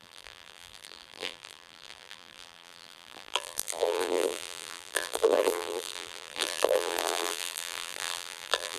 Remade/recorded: remade